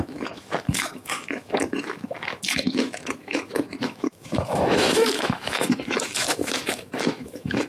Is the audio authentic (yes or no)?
no